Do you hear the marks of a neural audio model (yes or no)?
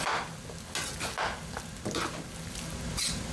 no